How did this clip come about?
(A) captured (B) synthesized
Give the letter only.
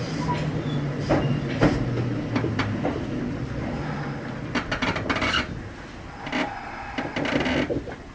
A